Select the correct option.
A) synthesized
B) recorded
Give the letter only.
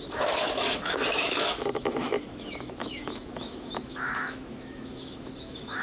A